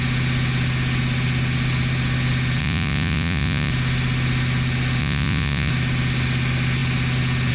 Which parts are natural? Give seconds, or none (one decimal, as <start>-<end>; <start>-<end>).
0.0-2.6; 3.7-5.0; 5.7-7.5